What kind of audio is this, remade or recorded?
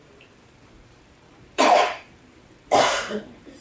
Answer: remade